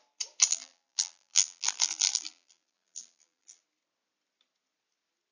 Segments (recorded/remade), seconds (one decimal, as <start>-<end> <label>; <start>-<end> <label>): 0.0-0.5 recorded; 0.5-3.6 remade; 3.6-5.3 recorded